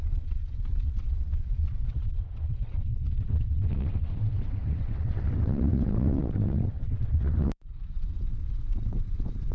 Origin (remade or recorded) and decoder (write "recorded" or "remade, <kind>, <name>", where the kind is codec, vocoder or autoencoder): remade, vocoder, WaveNeXt